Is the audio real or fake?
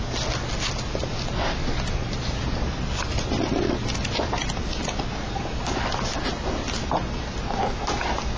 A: real